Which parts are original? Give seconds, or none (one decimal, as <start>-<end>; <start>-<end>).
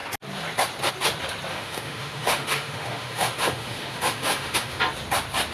0.0-1.5; 4.8-5.5